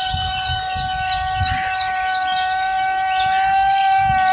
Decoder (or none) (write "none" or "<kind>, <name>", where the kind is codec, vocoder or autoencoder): none